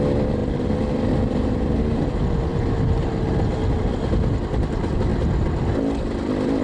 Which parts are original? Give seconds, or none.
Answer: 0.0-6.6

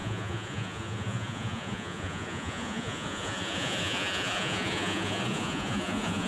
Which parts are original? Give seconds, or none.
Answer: none

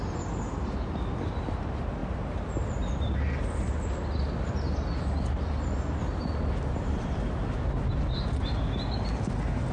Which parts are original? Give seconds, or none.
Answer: 0.0-9.7

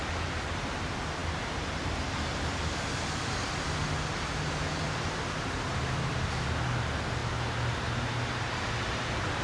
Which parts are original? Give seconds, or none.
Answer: 0.0-9.4

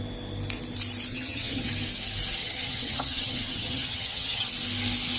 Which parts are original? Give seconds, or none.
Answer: 0.0-1.1; 1.7-2.4; 4.5-5.2

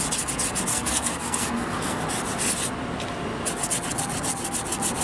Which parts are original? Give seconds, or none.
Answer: 0.0-0.7; 2.0-5.0